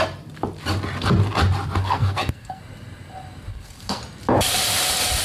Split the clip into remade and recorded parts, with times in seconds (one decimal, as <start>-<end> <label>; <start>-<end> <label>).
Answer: 0.0-1.8 recorded; 1.8-2.6 remade; 2.6-3.5 recorded; 3.5-4.0 remade; 4.0-5.2 recorded